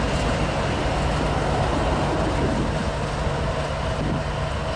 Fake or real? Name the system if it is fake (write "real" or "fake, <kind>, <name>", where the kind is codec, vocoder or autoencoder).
real